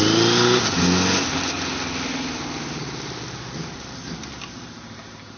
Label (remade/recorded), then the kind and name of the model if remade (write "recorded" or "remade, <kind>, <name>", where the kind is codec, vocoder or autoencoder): recorded